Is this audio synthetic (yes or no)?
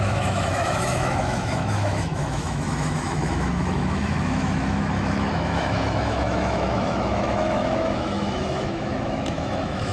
yes